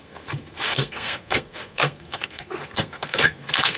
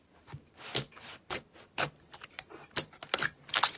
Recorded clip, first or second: second